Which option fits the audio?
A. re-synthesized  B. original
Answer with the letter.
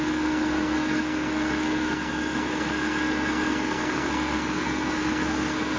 A